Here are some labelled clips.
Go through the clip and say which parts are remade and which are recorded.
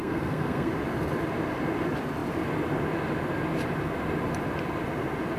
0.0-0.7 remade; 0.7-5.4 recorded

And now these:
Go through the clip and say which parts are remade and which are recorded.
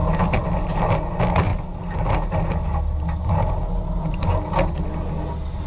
0.0-5.7 recorded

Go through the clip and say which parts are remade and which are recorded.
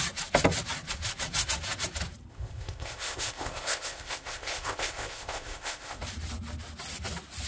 0.0-2.3 recorded; 2.3-6.0 remade; 6.0-7.5 recorded